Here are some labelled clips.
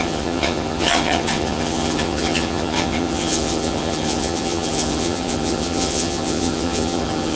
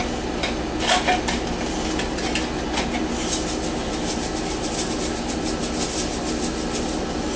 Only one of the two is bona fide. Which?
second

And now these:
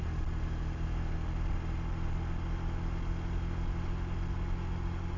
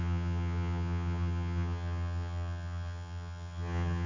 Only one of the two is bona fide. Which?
first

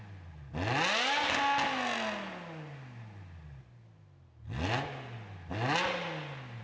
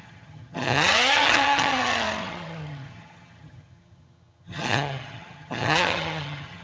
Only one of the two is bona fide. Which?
first